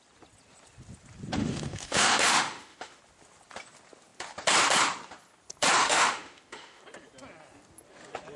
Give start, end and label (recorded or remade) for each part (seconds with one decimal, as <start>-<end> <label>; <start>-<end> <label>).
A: 0.0-1.4 recorded; 1.4-3.0 remade; 3.0-5.8 recorded; 5.8-6.8 remade; 6.8-8.4 recorded